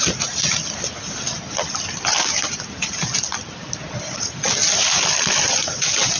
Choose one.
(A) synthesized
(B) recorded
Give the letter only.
B